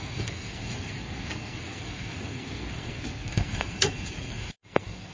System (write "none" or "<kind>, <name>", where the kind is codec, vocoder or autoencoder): codec, SNAC